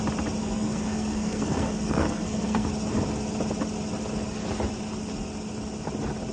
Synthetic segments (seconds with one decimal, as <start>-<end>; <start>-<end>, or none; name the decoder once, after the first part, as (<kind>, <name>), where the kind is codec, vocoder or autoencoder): 0.4-2.7 (codec, SNAC)